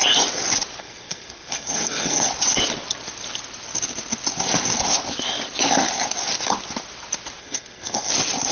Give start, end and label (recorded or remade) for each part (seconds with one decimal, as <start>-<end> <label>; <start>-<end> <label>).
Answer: 0.0-0.8 recorded; 0.8-2.3 remade; 2.3-7.4 recorded; 7.4-8.1 remade; 8.1-8.5 recorded